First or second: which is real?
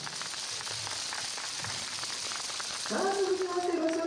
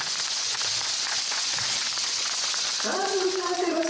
first